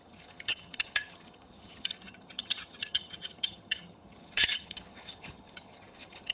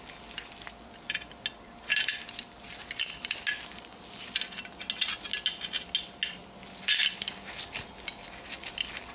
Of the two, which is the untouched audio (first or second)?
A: second